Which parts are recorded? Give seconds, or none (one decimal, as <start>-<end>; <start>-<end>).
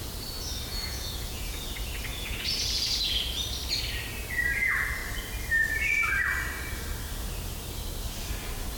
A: 0.0-0.7; 1.6-2.1; 3.2-8.8